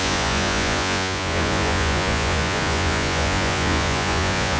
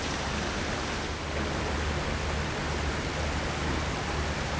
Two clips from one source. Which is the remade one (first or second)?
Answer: first